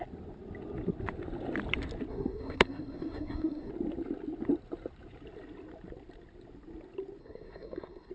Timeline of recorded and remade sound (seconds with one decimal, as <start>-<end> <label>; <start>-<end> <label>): 0.0-2.1 recorded; 2.1-3.7 remade; 3.7-7.2 recorded; 7.2-8.1 remade